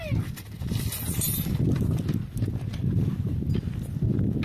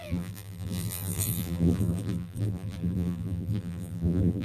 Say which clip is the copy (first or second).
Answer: second